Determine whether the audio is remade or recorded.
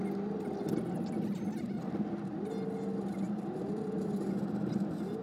recorded